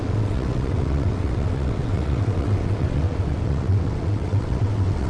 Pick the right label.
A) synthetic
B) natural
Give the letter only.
A